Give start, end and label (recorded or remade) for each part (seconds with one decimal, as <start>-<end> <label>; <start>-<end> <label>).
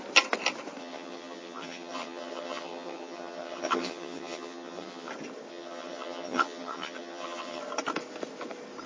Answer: 0.0-0.8 recorded; 0.8-5.1 remade; 5.1-5.5 recorded; 5.5-7.6 remade; 7.6-8.9 recorded